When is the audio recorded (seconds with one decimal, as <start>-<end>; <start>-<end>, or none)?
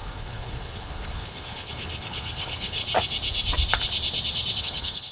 2.8-4.6